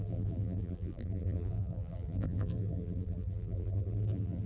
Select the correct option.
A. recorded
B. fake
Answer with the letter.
B